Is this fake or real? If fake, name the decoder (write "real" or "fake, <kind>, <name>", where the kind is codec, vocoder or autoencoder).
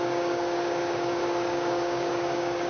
fake, codec, DAC